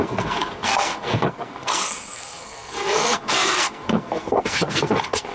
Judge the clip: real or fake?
fake